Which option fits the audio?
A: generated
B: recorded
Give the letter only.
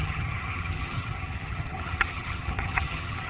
A